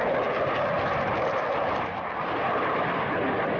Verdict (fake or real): real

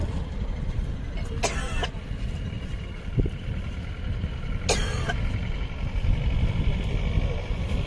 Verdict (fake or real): real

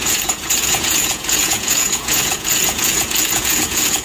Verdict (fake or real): fake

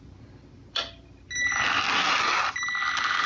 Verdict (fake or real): real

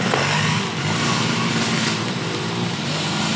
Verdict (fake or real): real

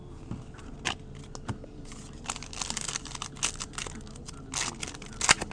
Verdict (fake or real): real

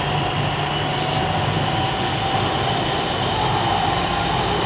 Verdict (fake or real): real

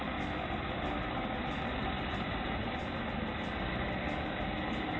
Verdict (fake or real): real